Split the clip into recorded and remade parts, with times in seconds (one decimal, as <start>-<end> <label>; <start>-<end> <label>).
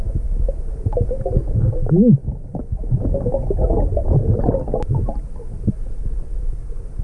0.0-7.0 recorded